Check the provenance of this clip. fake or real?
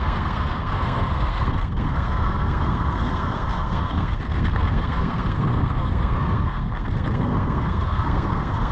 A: fake